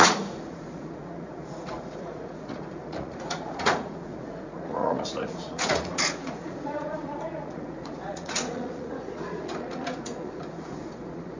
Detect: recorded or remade remade